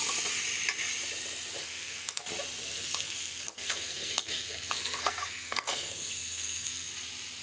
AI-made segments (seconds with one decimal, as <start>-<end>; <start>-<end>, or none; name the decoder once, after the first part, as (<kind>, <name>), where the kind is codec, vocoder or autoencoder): 1.6-2.2 (codec, SNAC); 2.6-6.9